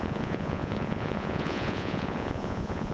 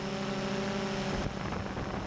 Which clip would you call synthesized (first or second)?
first